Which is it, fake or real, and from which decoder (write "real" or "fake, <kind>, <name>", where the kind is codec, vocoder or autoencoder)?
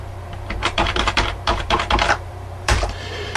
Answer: fake, vocoder, BigVGAN v2